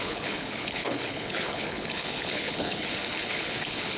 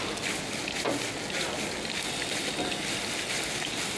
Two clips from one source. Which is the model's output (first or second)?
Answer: first